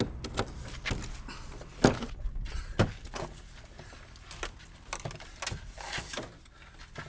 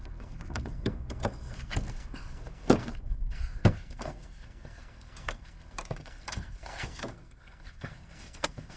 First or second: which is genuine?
first